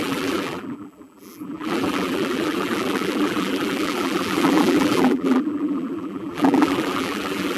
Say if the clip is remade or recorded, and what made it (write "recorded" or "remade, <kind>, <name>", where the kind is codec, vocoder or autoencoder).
remade, vocoder, BigVGAN v2